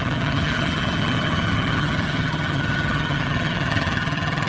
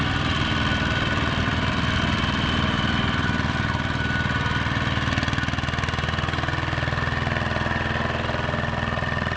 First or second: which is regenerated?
first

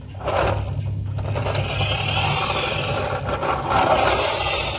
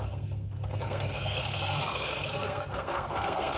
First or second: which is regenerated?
second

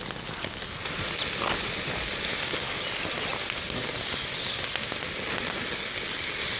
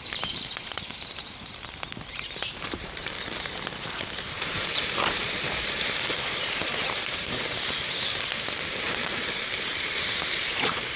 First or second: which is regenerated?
second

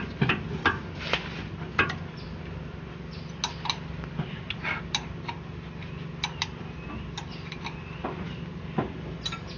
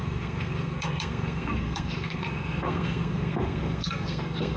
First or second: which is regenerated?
second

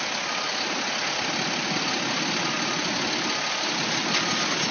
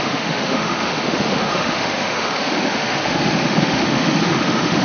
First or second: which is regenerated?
second